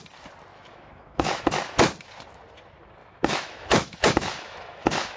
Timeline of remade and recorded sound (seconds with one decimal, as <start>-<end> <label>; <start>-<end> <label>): 0.0-0.5 recorded; 0.5-1.4 remade; 1.4-3.0 recorded; 3.0-5.2 remade